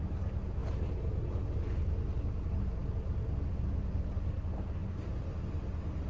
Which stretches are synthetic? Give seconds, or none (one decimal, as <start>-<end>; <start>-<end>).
4.8-5.4